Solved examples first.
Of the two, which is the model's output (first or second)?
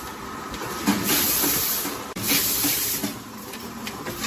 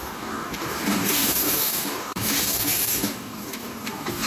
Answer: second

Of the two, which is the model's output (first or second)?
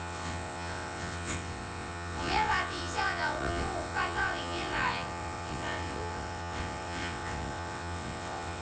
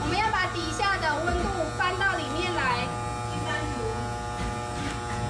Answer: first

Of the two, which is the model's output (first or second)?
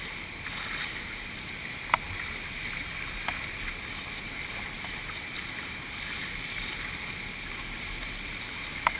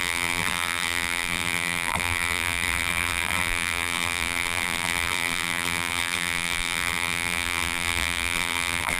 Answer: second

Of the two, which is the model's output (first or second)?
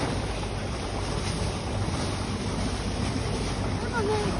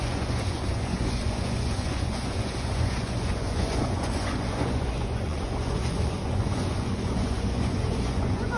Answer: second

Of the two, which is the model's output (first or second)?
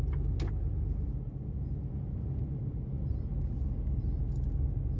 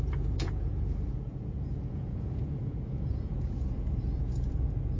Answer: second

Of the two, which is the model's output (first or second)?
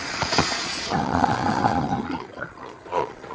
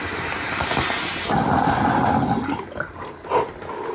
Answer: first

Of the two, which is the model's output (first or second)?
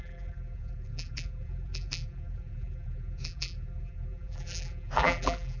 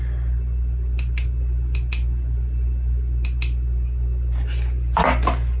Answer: first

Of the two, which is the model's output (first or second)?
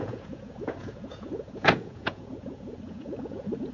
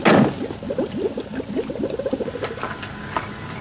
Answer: first